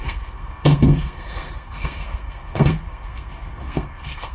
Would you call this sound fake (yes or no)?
yes